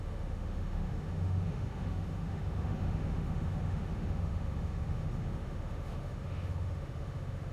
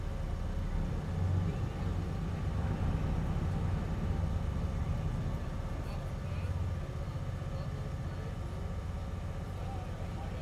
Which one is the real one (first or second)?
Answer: second